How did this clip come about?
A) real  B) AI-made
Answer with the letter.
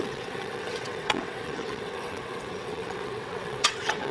B